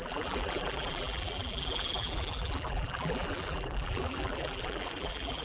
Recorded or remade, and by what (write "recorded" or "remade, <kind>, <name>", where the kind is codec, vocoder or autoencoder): remade, vocoder, BigVGAN v2